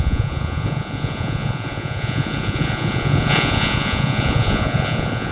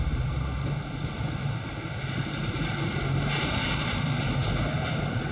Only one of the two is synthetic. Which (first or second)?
first